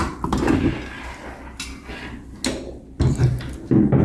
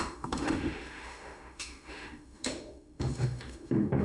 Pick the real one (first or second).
first